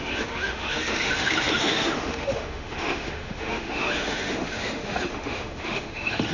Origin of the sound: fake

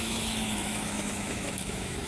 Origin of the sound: fake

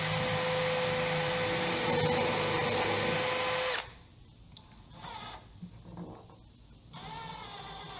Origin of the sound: real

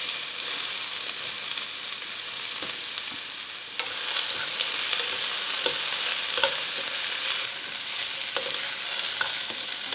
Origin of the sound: real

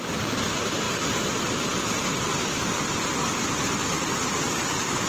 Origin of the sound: real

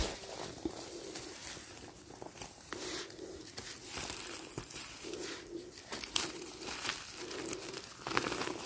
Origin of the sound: real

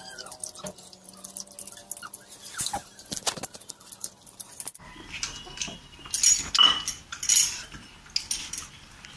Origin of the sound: real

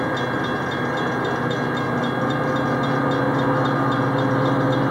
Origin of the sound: real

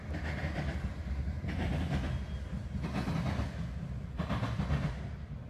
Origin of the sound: real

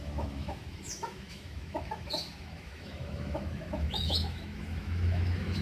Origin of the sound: fake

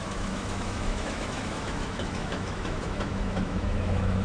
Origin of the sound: fake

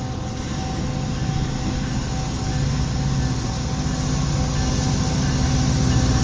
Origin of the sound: real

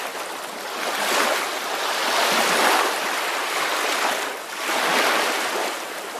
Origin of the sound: real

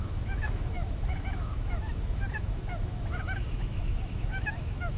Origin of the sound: fake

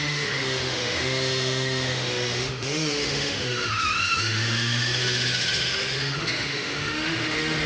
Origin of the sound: fake